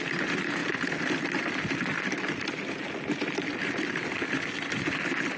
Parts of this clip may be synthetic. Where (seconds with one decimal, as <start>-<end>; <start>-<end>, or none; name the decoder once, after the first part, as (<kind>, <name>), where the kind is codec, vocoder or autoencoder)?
none